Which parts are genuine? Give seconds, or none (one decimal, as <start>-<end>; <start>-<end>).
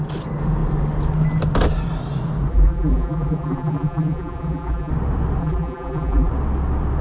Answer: 0.0-2.5; 4.9-5.4; 6.3-7.0